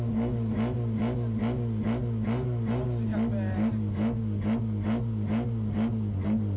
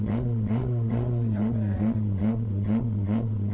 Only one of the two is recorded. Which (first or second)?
first